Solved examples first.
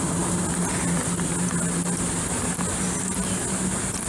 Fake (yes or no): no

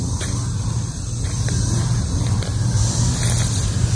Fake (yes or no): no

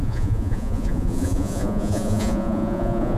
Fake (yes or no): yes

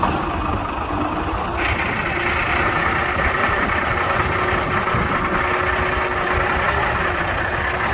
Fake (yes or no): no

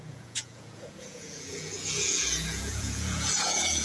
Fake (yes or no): yes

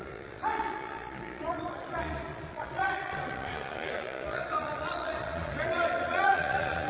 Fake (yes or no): yes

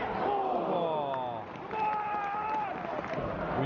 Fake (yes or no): no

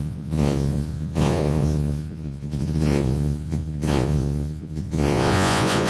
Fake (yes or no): yes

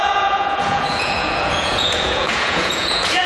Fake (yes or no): yes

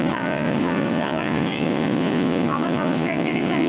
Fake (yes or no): yes